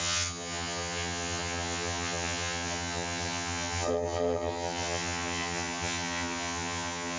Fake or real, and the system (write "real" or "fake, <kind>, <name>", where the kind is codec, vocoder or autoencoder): fake, vocoder, HiFi-GAN